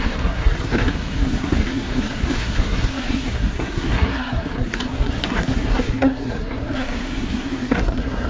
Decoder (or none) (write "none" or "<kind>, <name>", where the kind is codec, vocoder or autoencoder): codec, SNAC